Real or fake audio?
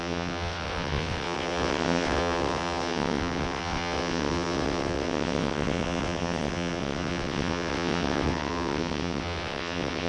fake